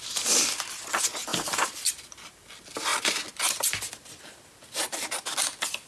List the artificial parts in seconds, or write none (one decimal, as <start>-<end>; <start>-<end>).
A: none